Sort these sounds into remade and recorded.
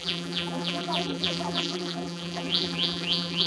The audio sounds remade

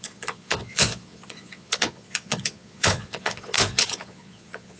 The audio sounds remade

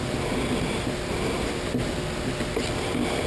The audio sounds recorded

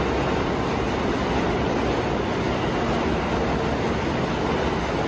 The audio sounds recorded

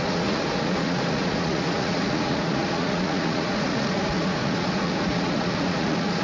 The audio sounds remade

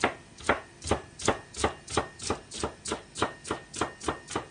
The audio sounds recorded